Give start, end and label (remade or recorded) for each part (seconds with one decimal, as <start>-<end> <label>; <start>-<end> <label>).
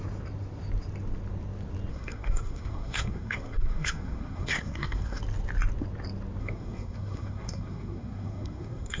0.0-1.9 recorded; 1.9-5.2 remade; 5.2-6.4 recorded; 6.4-9.0 remade